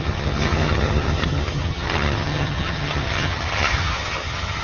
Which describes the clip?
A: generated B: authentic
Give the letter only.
A